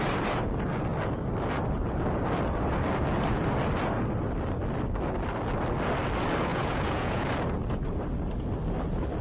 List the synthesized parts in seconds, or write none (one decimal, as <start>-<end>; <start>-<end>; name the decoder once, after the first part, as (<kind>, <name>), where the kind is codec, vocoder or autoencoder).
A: 6.5-7.2 (vocoder, Vocos)